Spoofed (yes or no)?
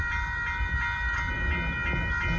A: no